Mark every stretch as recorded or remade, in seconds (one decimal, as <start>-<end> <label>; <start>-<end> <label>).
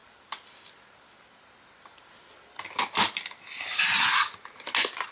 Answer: 0.0-5.1 recorded